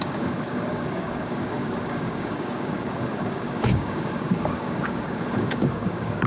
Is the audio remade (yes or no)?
yes